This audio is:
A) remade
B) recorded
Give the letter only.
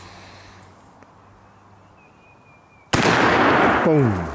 B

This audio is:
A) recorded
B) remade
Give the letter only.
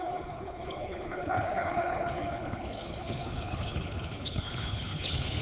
B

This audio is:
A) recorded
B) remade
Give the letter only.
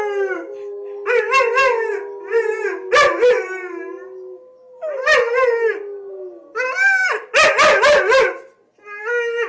A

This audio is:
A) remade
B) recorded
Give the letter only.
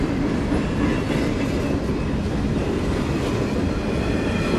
B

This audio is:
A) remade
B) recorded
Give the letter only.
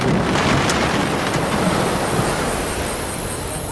B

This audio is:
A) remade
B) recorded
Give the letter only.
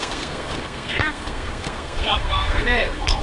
A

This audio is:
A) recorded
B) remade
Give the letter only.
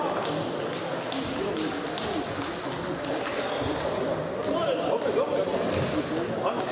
A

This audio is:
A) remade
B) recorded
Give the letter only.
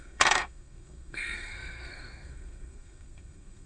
A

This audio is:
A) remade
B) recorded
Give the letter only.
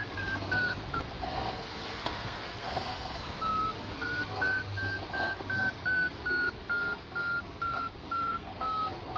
A